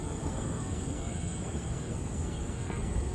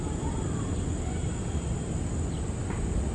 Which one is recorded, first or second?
second